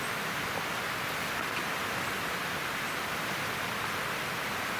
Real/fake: real